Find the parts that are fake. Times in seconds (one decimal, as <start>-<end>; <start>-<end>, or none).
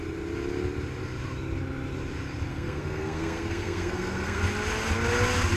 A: 2.5-4.4